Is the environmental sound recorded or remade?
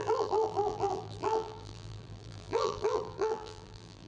remade